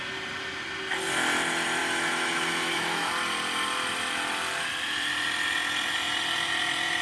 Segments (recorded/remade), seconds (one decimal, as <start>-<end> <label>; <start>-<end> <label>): 0.0-1.8 recorded; 1.8-3.1 remade; 3.1-7.0 recorded